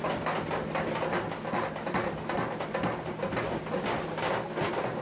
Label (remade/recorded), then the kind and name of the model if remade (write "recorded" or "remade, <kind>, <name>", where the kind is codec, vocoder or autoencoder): recorded